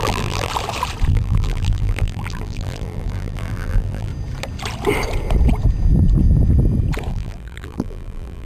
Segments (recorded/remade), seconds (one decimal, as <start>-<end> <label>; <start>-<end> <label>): 0.0-0.5 remade; 0.5-1.1 recorded; 1.1-4.1 remade; 4.1-7.1 recorded; 7.1-8.5 remade